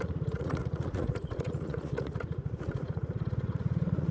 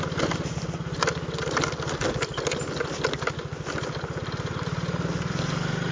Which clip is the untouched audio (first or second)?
second